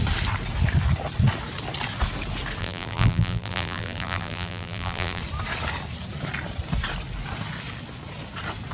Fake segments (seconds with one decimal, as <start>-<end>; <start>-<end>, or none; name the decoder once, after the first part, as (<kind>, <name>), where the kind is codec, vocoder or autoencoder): 2.6-5.2 (vocoder, BigVGAN v2)